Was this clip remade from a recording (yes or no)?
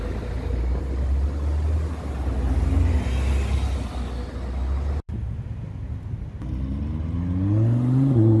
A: no